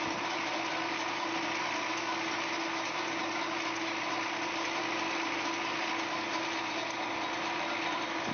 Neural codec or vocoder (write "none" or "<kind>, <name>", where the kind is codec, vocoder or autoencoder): none